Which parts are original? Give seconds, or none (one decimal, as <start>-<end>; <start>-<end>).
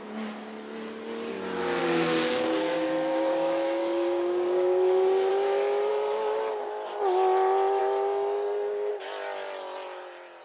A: 0.0-1.8; 5.3-5.9; 6.5-7.8; 8.9-10.4